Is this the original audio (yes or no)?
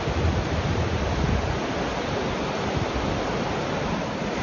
yes